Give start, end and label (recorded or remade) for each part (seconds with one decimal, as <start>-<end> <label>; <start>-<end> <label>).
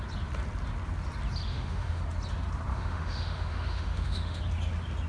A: 0.0-1.5 recorded; 1.5-2.0 remade; 2.0-2.7 recorded; 2.7-4.4 remade; 4.4-5.1 recorded